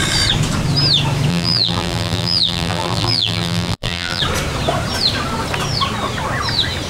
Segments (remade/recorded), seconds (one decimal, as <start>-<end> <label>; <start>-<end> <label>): 0.0-1.3 recorded; 1.3-4.2 remade; 4.2-6.9 recorded